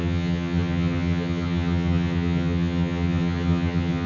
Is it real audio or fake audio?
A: fake